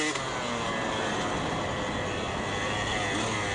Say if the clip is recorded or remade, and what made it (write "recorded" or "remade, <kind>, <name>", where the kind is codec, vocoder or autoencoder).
recorded